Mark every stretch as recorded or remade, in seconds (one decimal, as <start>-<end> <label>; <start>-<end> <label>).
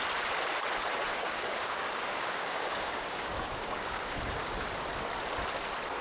0.0-1.1 recorded; 1.1-4.7 remade; 4.7-6.0 recorded